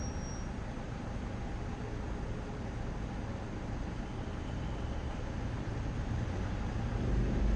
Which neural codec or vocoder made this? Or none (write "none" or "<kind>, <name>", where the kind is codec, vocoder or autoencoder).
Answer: none